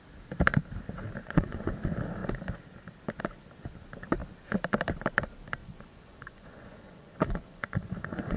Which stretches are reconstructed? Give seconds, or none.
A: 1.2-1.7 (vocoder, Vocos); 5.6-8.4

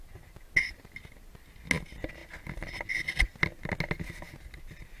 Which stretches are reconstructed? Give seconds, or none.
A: none

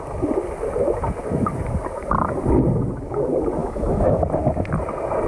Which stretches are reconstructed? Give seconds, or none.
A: 3.6-4.2 (autoencoder, DAC-VAE)